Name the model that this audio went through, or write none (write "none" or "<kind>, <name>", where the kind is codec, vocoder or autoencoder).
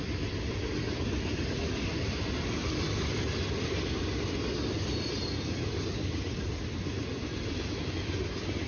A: none